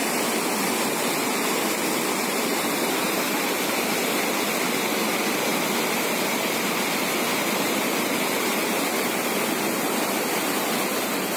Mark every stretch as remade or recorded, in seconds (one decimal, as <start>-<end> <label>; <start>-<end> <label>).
0.0-5.5 recorded; 5.5-6.3 remade; 6.3-7.3 recorded; 7.3-8.0 remade; 8.0-11.4 recorded